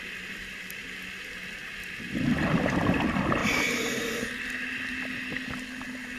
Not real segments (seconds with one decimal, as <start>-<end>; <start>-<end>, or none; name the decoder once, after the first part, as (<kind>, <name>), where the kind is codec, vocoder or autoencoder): none